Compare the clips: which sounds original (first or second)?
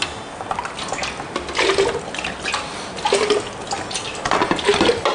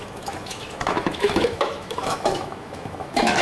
first